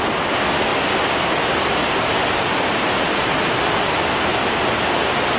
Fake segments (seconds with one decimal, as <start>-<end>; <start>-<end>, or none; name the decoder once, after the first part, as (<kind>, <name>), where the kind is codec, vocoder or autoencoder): none

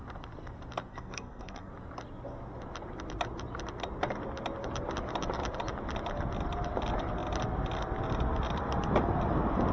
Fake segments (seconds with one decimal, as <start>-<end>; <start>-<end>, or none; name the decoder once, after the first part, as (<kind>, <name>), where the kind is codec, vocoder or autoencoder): 0.9-1.7 (codec, SNAC)

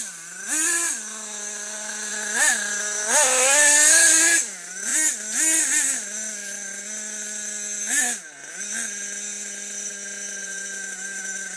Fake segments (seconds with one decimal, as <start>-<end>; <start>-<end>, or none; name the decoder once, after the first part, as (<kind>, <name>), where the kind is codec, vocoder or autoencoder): 10.4-11.2 (vocoder, BigVGAN v2)

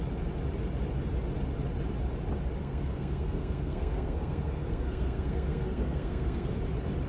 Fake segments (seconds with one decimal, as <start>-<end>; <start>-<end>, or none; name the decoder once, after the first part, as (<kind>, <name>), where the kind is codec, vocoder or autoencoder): 2.6-6.6 (codec, SNAC)

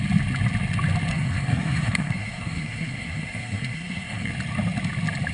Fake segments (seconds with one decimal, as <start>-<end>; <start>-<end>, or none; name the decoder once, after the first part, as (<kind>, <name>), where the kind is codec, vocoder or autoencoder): 1.1-4.3 (codec, SNAC)

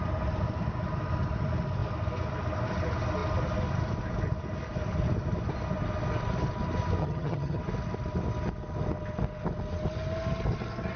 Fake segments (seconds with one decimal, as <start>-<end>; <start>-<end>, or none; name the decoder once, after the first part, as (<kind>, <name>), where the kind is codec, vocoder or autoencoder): 7.0-7.6 (vocoder, HiFi-GAN)